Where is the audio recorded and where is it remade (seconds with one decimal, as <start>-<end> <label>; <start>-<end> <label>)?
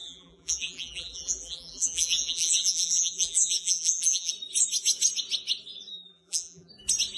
0.0-4.3 remade; 4.3-5.9 recorded; 5.9-6.7 remade; 6.7-7.2 recorded